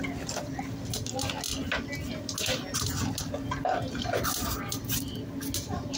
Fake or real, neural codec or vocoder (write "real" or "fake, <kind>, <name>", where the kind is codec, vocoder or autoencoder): real